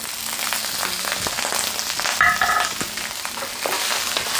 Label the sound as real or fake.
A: real